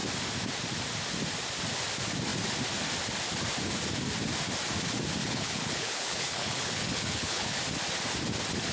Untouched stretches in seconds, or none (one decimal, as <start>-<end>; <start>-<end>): 0.0-5.2; 7.6-8.7